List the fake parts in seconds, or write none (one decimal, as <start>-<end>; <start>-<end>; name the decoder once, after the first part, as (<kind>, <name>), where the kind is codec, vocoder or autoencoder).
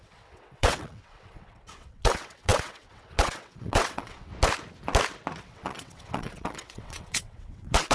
0.0-4.3 (vocoder, WaveNeXt); 5.4-7.9